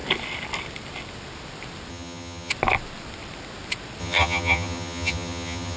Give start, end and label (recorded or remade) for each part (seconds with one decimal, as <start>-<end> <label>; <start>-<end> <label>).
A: 0.0-1.9 recorded; 1.9-2.5 remade; 2.5-4.0 recorded; 4.0-5.8 remade